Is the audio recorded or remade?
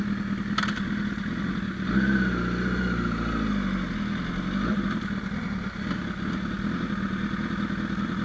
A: recorded